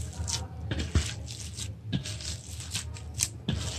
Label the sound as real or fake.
real